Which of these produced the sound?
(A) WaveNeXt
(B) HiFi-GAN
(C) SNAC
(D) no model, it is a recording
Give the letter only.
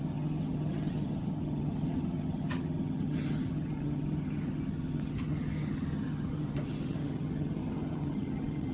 B